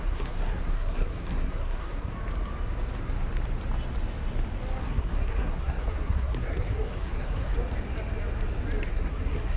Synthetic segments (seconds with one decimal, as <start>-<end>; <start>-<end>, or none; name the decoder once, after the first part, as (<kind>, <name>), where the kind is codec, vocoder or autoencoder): 0.0-2.1 (codec, SNAC); 4.8-7.5; 8.9-9.6

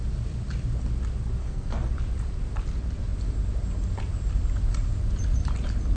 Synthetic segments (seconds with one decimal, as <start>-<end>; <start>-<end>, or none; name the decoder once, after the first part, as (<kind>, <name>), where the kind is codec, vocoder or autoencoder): 1.4-1.9 (codec, SNAC)

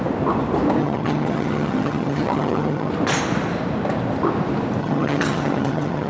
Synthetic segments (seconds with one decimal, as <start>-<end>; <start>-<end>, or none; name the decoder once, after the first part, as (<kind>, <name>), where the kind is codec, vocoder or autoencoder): 0.8-2.9 (vocoder, HiFi-GAN); 4.8-6.1